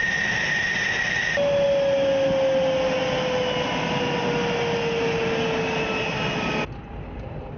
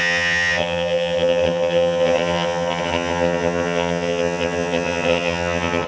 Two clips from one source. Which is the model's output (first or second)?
second